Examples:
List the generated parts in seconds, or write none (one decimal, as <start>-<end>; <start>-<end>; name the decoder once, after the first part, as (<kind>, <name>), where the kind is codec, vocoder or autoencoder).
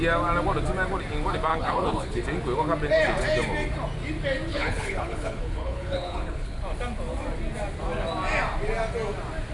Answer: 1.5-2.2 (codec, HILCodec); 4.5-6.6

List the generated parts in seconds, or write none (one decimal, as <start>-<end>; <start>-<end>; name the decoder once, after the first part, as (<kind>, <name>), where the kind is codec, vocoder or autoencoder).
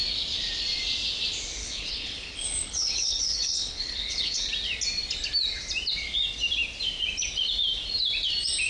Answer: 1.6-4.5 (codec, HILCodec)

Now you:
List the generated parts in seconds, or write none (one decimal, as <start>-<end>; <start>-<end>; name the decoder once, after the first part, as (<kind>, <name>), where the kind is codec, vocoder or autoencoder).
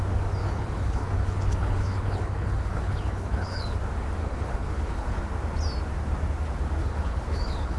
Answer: 0.4-3.8 (codec, HILCodec); 4.2-5.2; 6.8-7.8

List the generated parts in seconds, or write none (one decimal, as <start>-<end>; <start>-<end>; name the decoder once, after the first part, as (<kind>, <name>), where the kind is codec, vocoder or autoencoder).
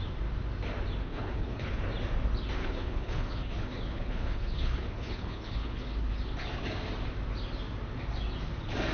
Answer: 1.0-1.8 (codec, HILCodec); 2.6-6.2